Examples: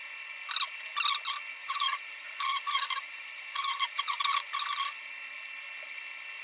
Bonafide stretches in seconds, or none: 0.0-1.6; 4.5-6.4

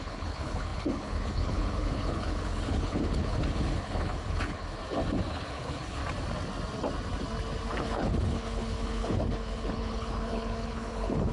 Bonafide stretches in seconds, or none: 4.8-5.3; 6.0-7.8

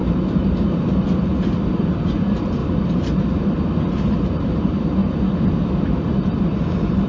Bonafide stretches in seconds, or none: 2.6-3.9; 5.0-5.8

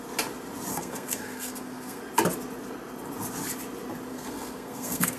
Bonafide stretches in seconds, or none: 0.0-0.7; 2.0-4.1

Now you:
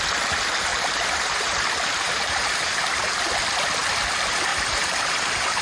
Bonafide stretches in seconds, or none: 0.0-0.7; 3.0-4.5

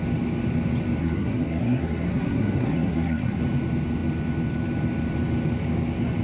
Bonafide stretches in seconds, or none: 0.0-1.0; 3.4-6.2

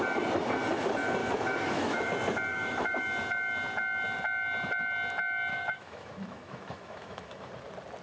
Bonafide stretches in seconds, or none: 0.0-1.2; 2.1-2.5; 3.0-5.5; 7.5-8.0